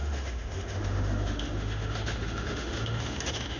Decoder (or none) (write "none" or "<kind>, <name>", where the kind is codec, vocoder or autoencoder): autoencoder, DAC-VAE